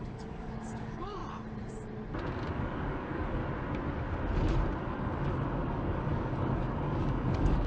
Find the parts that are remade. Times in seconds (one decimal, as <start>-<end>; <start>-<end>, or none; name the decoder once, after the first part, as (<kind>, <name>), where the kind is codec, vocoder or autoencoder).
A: 0.0-1.2 (codec, DAC); 2.5-3.4; 4.8-7.7